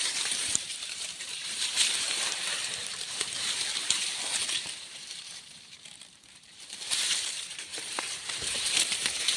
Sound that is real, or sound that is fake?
fake